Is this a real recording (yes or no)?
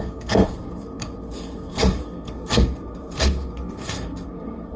no